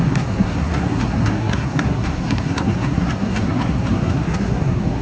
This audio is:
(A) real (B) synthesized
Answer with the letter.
B